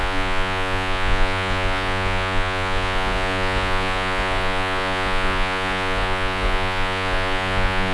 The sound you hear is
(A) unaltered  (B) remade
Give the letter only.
B